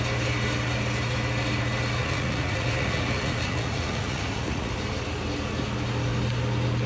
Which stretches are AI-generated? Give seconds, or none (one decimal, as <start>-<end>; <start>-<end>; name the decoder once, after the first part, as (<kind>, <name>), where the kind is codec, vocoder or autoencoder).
2.0-4.7 (vocoder, Vocos)

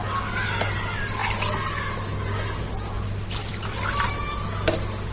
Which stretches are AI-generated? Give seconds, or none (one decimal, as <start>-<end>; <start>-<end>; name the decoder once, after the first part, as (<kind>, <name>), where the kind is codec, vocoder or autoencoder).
3.4-4.1 (vocoder, BigVGAN v2)

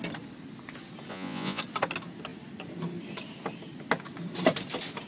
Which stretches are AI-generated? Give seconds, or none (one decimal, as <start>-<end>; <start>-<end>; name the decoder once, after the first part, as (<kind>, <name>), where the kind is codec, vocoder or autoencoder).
1.1-1.6 (vocoder, Vocos)

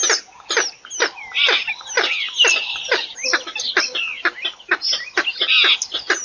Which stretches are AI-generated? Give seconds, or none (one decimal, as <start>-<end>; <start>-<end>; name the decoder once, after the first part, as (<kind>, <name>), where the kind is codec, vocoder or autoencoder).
none

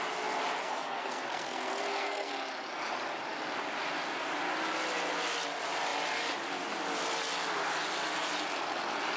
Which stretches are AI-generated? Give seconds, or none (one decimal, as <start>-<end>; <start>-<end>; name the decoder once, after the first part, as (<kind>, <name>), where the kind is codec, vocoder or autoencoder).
0.6-2.3 (codec, SNAC)

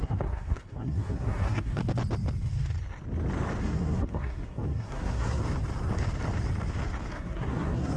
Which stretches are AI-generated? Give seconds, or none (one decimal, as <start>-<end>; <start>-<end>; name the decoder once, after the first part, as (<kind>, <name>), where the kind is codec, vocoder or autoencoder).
0.0-1.8 (codec, SNAC); 3.6-5.4; 7.1-8.0

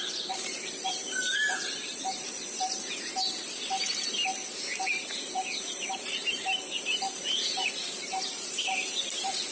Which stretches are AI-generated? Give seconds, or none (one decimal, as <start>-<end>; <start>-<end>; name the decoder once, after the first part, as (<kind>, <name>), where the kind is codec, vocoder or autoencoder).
0.0-9.5 (vocoder, BigVGAN v2)

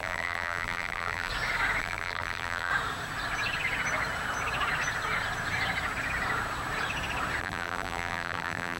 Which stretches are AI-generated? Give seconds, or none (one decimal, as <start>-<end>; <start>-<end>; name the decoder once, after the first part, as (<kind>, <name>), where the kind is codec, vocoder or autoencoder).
0.0-1.3 (vocoder, BigVGAN v2); 1.8-2.7; 7.4-8.8